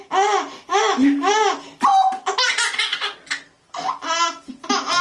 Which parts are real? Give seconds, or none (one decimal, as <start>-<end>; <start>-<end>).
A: 0.0-0.7; 1.3-5.0